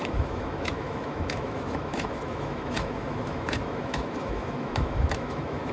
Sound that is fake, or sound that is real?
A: fake